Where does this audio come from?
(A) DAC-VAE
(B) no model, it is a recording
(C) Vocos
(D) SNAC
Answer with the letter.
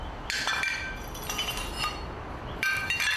B